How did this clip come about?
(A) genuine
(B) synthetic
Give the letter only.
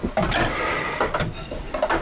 A